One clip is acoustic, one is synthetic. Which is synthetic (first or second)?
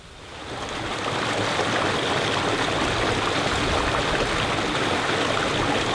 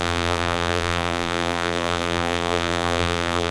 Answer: second